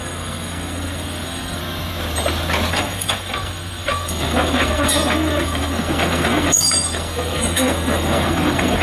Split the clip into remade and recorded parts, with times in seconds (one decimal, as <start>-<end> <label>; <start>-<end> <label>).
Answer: 0.0-1.6 remade; 1.6-2.7 recorded; 2.7-8.8 remade